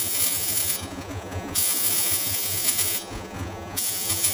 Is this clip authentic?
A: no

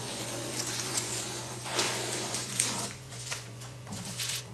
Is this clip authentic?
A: no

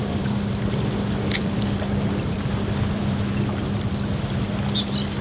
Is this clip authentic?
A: no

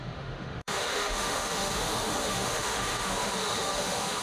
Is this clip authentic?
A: no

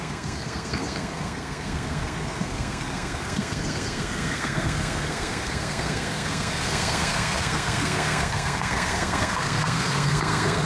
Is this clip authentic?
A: no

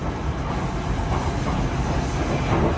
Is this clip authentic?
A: yes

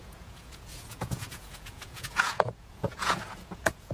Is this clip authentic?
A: no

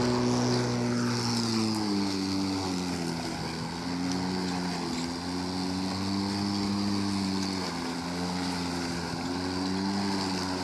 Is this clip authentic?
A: yes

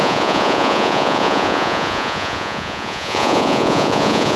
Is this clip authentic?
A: no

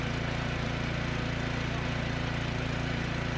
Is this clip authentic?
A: yes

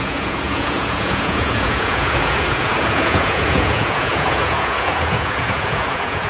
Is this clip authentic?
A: no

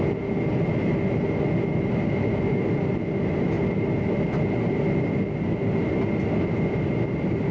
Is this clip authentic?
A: yes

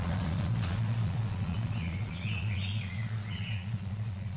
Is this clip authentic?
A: no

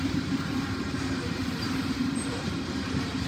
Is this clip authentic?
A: no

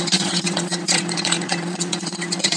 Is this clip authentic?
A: no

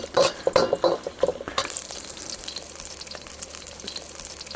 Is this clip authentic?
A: yes